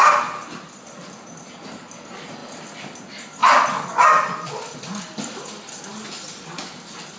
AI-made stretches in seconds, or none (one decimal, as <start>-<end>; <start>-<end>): none